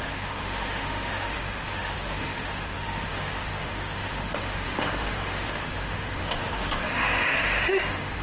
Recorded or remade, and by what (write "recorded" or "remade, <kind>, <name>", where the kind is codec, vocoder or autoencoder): remade, autoencoder, DAC-VAE